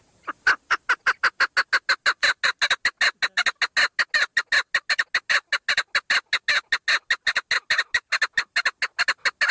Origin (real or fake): real